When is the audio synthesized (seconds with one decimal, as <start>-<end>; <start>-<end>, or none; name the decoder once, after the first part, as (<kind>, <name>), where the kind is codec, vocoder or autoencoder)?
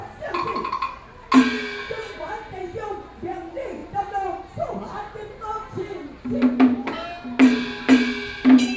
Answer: none